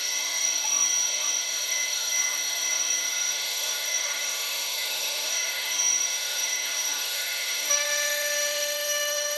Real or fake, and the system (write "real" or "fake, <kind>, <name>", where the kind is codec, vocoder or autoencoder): fake, autoencoder, DAC-VAE